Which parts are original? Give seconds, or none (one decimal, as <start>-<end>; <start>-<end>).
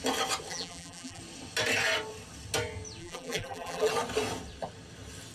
0.0-0.5; 1.2-3.0; 3.9-5.3